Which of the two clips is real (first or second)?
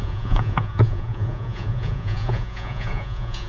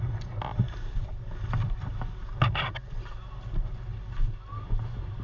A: second